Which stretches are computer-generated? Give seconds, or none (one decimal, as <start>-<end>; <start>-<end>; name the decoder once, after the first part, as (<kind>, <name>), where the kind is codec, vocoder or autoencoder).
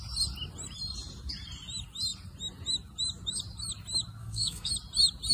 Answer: 4.2-4.7 (codec, SNAC)